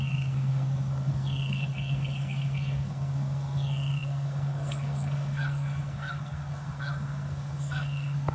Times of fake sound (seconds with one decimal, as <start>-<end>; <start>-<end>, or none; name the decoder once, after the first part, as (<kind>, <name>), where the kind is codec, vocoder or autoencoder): 0.0-8.3 (codec, SNAC)